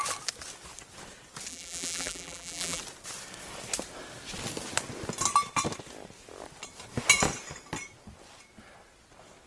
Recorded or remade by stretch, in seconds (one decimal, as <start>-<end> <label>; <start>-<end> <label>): 0.0-1.5 recorded; 1.5-2.8 remade; 2.8-9.5 recorded